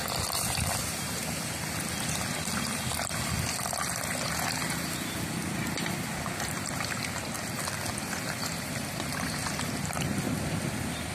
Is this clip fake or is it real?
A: real